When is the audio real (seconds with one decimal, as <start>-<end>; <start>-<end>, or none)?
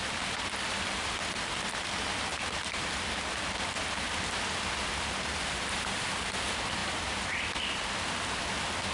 0.0-8.9